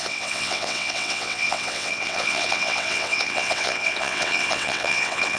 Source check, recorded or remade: remade